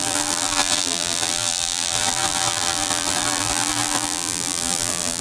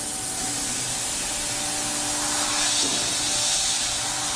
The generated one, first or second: first